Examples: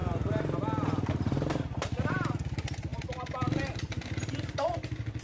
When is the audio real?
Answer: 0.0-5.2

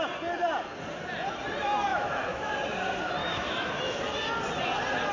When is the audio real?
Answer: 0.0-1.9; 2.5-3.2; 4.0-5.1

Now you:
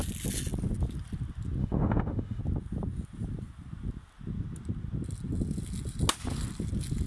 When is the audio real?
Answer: 0.0-1.6; 2.4-7.1